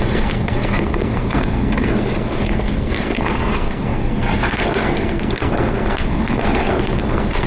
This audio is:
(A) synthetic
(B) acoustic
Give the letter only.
A